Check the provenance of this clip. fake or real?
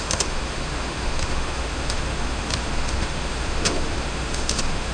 fake